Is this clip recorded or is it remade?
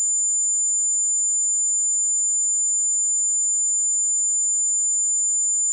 recorded